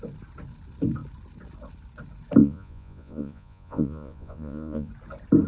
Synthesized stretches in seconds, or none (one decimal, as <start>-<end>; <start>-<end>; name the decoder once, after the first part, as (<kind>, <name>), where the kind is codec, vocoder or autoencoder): 2.4-4.9 (vocoder, Vocos)